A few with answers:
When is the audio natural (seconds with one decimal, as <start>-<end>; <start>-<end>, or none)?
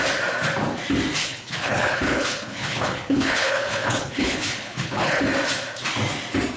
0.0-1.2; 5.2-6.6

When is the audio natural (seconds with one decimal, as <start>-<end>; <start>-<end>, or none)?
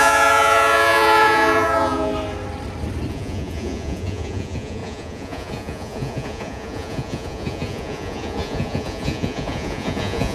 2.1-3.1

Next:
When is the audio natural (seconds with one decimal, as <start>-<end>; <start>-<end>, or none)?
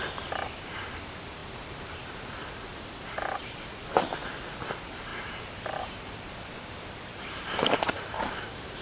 0.0-5.1